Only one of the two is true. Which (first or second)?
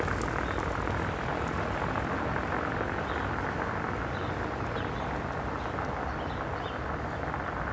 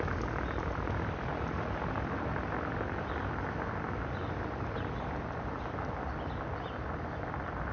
first